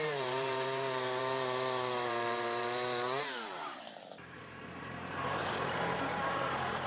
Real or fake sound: fake